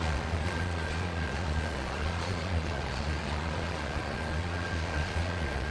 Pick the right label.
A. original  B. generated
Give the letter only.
B